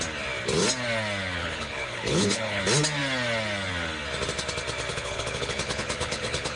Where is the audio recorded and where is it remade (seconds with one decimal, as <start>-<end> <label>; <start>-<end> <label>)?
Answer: 0.0-1.4 recorded; 1.4-2.6 remade; 2.6-4.9 recorded; 4.9-6.6 remade